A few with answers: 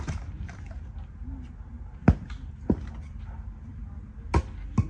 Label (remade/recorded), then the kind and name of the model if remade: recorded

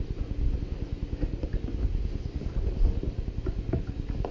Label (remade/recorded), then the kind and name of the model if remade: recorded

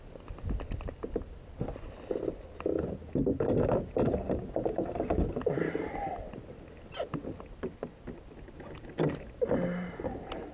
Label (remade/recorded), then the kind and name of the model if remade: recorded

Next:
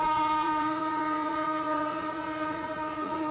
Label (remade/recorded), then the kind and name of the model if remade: remade, vocoder, Vocos